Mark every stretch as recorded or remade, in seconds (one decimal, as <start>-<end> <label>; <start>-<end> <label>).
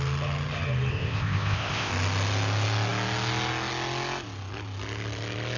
0.0-0.9 recorded; 0.9-1.9 remade; 1.9-5.6 recorded